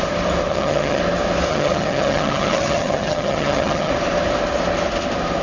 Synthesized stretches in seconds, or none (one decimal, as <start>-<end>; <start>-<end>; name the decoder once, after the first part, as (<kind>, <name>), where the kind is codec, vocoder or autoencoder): 0.5-1.0 (vocoder, HiFi-GAN); 1.5-3.9

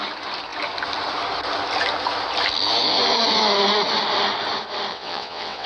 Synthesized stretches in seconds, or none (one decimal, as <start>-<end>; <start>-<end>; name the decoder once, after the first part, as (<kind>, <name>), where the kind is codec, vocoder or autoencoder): 4.9-5.7 (vocoder, WaveNeXt)

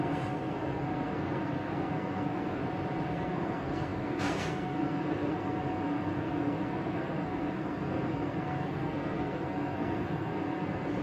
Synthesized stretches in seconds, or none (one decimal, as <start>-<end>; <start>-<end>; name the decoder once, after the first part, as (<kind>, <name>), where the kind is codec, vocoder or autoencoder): 0.0-2.6 (codec, SNAC); 3.1-11.0

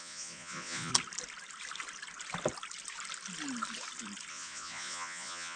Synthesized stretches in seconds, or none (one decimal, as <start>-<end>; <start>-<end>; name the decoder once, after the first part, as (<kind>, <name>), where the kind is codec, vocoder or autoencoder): 0.0-0.9 (vocoder, Vocos); 4.3-5.6

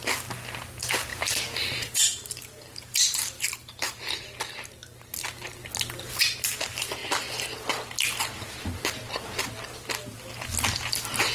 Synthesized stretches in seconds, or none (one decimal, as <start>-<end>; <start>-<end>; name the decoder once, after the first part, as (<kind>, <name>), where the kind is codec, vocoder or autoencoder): 1.1-4.0 (vocoder, BigVGAN v2)